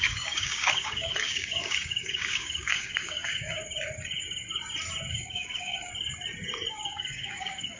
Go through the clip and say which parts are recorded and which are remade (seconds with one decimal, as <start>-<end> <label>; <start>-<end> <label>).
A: 0.0-3.6 remade; 3.6-5.1 recorded; 5.1-5.9 remade; 5.9-6.7 recorded; 6.7-7.8 remade